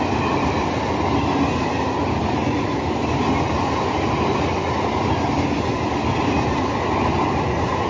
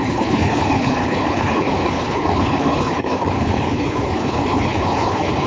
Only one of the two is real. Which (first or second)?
first